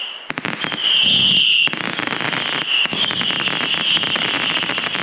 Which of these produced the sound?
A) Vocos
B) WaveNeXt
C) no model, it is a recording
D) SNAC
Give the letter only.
C